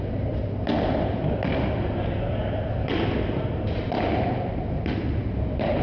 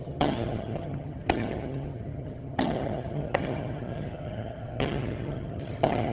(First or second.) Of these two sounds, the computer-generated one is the second